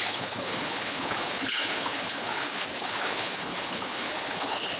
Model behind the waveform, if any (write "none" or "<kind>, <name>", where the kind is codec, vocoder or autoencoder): codec, HILCodec